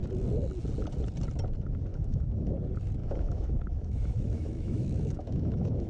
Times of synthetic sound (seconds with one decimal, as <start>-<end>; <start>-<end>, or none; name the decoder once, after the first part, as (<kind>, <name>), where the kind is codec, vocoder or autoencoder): 1.9-2.5 (autoencoder, DAC-VAE); 3.0-5.9